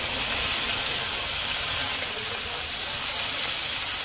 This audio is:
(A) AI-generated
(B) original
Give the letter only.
B